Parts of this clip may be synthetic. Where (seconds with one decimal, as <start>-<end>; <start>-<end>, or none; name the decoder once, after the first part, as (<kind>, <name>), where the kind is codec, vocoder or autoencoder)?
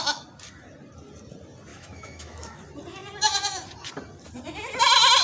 1.7-2.6 (autoencoder, DAC-VAE)